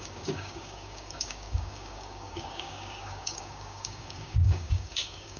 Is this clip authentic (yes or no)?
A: no